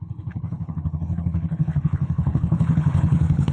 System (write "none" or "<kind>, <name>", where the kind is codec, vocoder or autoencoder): codec, HILCodec